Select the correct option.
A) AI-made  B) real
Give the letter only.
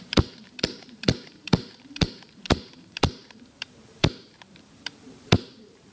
A